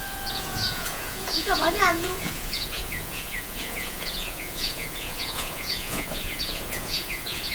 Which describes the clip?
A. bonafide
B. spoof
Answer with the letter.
B